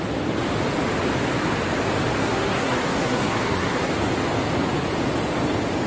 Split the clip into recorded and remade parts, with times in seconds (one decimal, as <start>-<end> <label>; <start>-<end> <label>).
0.0-2.2 recorded; 2.2-3.9 remade; 3.9-5.9 recorded